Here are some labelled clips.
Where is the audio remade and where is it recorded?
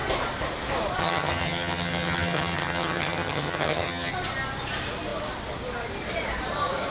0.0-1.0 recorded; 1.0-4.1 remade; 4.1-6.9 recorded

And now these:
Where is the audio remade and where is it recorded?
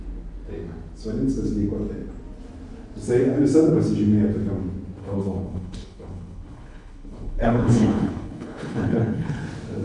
0.0-5.0 recorded; 5.0-9.4 remade; 9.4-9.8 recorded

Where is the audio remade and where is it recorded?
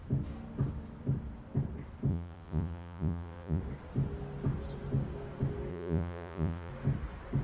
0.0-2.1 recorded; 2.1-3.6 remade; 3.6-5.7 recorded; 5.7-6.7 remade; 6.7-7.4 recorded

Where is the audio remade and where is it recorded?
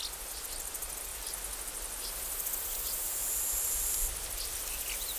0.0-1.1 remade; 1.1-2.6 recorded; 2.6-3.2 remade; 3.2-5.2 recorded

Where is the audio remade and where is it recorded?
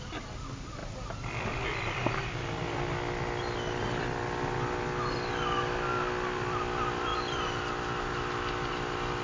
0.0-9.2 recorded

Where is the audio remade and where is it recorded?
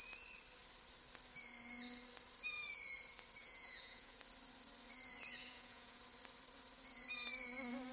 0.0-3.4 recorded; 3.4-4.2 remade; 4.2-5.4 recorded; 5.4-6.0 remade; 6.0-7.9 recorded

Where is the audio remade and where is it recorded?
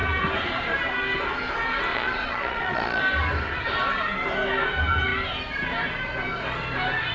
0.0-1.9 recorded; 1.9-3.0 remade; 3.0-7.1 recorded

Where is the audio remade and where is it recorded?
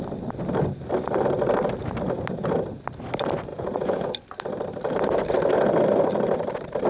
0.0-3.5 recorded; 3.5-4.1 remade; 4.1-6.9 recorded